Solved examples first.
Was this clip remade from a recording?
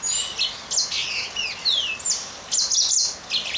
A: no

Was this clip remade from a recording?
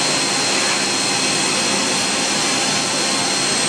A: no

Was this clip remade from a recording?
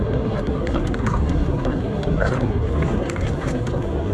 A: yes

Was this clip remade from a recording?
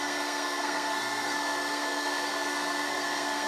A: yes